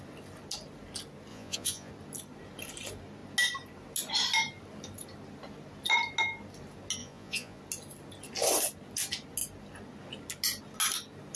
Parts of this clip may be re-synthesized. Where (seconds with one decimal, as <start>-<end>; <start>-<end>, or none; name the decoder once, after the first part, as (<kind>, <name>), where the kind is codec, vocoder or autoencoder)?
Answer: 1.3-1.9 (vocoder, Vocos); 7.0-7.6